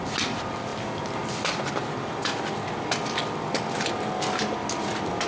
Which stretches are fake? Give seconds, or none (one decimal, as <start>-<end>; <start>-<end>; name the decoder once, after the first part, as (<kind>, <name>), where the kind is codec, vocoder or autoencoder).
none